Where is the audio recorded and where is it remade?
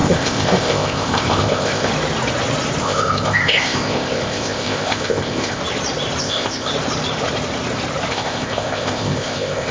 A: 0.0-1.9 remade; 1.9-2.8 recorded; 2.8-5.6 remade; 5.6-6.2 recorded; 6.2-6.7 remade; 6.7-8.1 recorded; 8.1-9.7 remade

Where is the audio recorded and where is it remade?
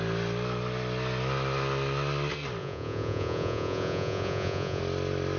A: 0.0-2.6 recorded; 2.6-4.8 remade; 4.8-5.4 recorded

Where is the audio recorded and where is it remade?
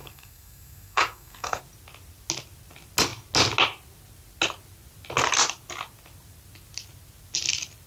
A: 0.0-1.6 remade; 1.6-7.9 recorded